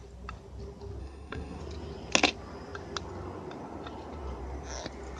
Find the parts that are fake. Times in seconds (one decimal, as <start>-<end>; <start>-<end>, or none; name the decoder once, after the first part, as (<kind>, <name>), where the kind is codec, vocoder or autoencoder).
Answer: 1.0-1.6 (codec, SNAC)